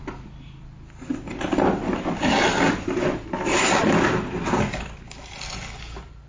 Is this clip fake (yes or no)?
no